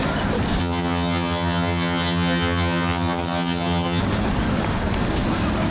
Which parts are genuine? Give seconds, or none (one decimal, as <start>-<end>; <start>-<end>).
0.0-0.6; 4.0-5.7

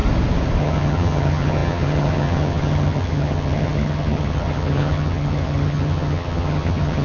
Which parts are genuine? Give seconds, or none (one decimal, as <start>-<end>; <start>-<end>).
0.0-0.6

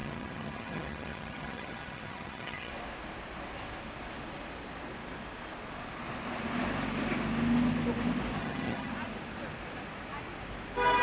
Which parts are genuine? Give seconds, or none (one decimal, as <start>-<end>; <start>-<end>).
2.7-8.4; 8.9-11.0

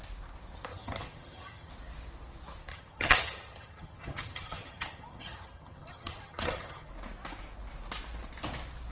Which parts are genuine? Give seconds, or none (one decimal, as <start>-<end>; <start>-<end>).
0.0-0.7; 1.7-2.7; 6.9-8.9